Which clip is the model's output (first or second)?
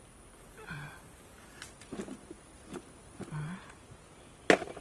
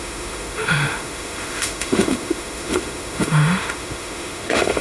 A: second